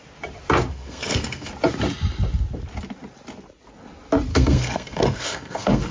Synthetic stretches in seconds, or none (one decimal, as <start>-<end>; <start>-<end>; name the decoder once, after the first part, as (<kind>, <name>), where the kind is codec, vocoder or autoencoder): 0.7-1.5 (codec, SNAC); 4.3-5.9